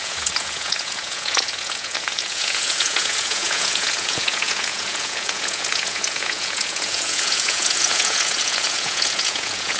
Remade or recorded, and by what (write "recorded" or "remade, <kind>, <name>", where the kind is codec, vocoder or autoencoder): remade, vocoder, Vocos